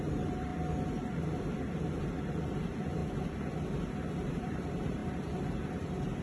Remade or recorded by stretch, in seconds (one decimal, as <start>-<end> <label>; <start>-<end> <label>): 0.0-0.5 remade; 0.5-2.1 recorded; 2.1-3.0 remade; 3.0-4.1 recorded; 4.1-6.2 remade

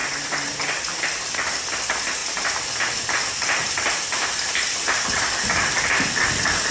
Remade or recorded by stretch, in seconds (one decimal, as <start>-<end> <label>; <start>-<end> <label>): 0.0-6.7 recorded

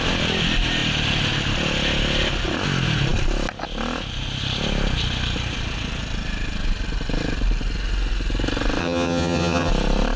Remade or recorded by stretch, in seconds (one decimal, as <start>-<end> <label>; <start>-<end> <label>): 0.0-8.8 recorded; 8.8-9.7 remade; 9.7-10.2 recorded